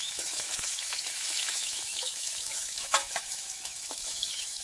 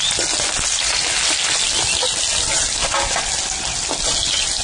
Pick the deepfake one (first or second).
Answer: first